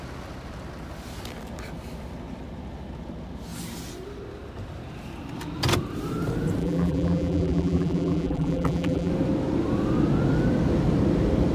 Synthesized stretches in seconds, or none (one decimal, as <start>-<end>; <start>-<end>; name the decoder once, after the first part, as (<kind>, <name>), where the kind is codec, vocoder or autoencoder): 6.6-9.1 (vocoder, BigVGAN v2)